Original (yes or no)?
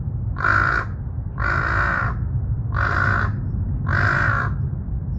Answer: yes